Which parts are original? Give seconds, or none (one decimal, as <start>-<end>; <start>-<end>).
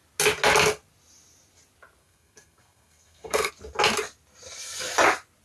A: 0.0-2.0; 3.5-5.4